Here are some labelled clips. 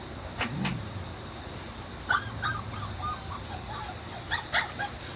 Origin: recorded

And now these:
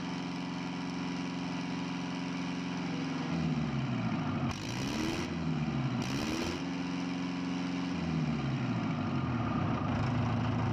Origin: recorded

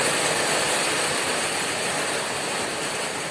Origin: recorded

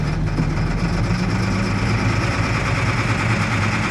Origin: recorded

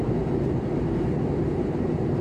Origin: recorded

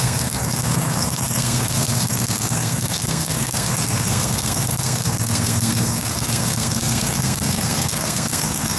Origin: remade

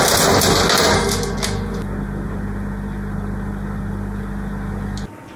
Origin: recorded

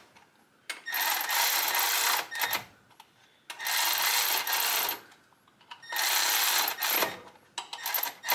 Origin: recorded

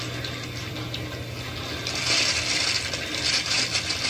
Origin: recorded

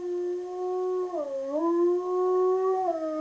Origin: recorded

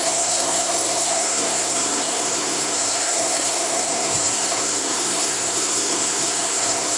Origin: remade